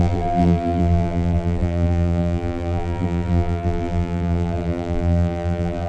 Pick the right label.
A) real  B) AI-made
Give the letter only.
B